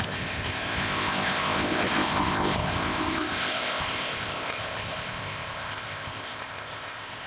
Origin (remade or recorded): remade